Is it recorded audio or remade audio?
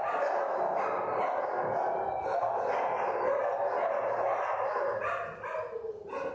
recorded